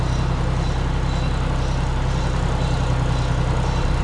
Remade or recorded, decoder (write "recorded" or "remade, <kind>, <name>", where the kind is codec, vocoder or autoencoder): recorded